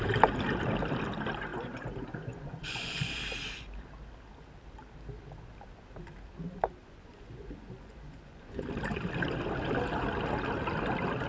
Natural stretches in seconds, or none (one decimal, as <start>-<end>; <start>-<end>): 0.0-1.5; 3.2-6.8; 8.6-11.3